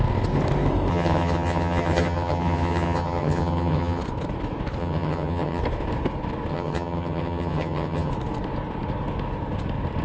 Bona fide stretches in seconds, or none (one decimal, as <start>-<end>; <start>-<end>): 0.0-0.9; 4.0-4.8; 5.6-6.5; 8.1-10.0